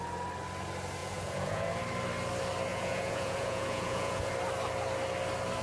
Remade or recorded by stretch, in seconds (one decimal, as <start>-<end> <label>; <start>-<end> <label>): 0.0-1.0 recorded; 1.0-1.8 remade; 1.8-2.7 recorded; 2.7-4.3 remade; 4.3-5.6 recorded